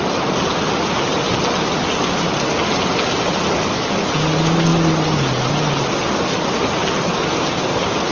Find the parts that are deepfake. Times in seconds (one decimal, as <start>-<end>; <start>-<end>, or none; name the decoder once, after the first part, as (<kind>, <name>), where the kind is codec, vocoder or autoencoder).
none